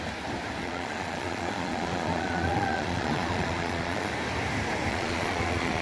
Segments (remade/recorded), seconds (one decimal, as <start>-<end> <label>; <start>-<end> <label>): 0.0-0.6 recorded; 0.6-4.1 remade; 4.1-4.9 recorded; 4.9-5.8 remade